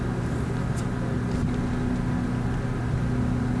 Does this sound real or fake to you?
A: real